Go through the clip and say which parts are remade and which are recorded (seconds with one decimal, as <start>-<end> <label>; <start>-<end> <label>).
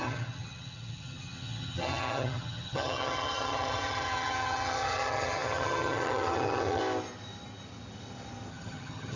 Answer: 0.0-6.8 remade; 6.8-8.5 recorded; 8.5-9.2 remade